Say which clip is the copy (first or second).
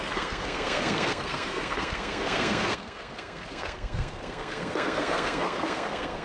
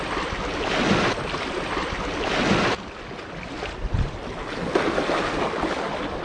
first